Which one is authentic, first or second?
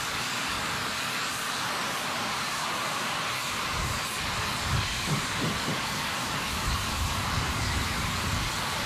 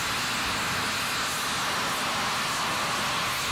second